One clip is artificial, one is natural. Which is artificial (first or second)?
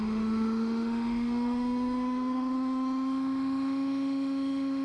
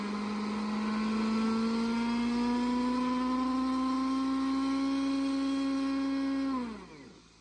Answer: first